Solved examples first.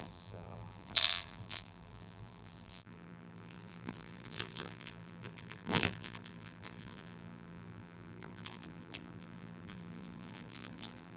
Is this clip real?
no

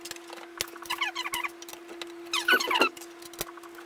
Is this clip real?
yes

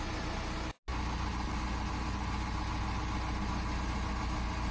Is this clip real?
yes